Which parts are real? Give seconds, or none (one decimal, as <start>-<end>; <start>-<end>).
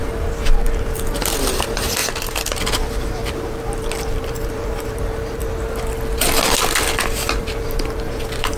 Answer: 5.4-7.4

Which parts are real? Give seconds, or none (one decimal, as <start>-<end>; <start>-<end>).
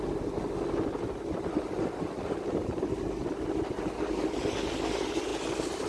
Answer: 0.0-2.6; 3.3-5.9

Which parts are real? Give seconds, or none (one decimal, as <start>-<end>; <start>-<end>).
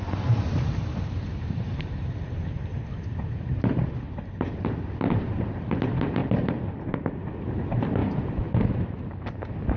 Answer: 6.2-7.4; 8.0-8.6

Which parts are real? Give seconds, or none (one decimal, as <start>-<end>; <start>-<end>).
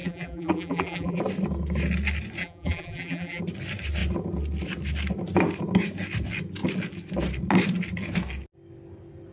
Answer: 1.2-2.4; 3.4-9.3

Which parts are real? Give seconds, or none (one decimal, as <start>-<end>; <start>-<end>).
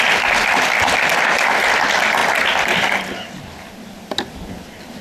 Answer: 0.0-5.0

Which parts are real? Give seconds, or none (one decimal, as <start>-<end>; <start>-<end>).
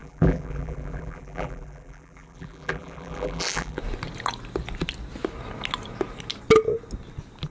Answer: 3.8-7.5